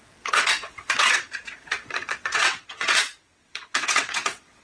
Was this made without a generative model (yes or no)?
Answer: no